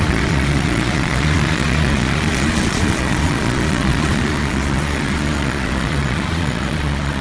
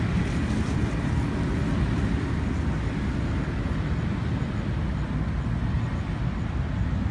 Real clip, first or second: second